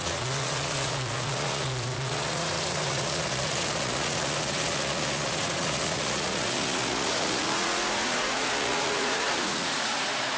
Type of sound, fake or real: fake